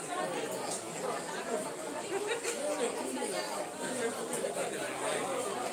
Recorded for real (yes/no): yes